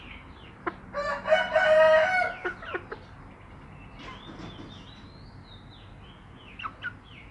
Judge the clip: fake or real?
real